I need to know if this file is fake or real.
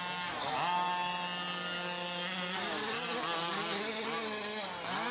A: real